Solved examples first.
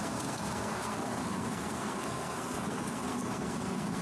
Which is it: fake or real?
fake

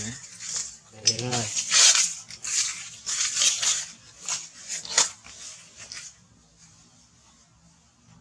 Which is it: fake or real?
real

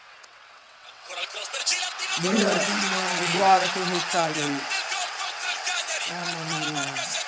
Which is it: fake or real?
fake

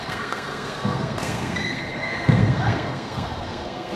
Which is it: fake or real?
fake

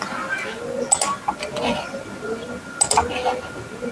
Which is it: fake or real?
real